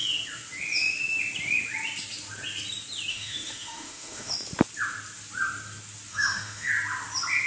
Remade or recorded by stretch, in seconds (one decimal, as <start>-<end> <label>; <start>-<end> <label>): 0.0-3.1 recorded; 3.1-4.3 remade; 4.3-6.1 recorded; 6.1-6.7 remade; 6.7-7.5 recorded